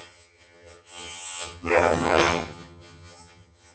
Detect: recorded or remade remade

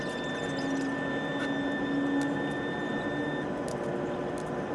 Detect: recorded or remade recorded